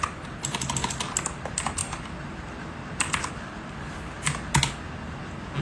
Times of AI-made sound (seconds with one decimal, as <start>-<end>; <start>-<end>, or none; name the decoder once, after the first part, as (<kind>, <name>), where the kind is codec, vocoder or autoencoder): none